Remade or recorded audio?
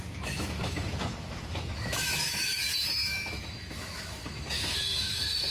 remade